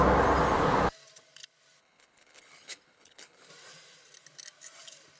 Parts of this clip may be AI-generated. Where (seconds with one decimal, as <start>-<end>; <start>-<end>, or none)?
1.8-3.5